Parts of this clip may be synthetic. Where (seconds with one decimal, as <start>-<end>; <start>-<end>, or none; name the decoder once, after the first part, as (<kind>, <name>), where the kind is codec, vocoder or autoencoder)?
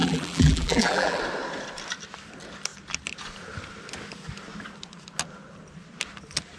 0.0-1.2 (vocoder, BigVGAN v2)